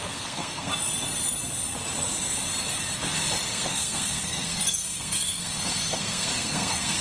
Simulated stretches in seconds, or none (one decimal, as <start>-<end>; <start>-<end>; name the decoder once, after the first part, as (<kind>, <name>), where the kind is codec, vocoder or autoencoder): 0.0-0.7 (codec, SNAC); 3.5-7.0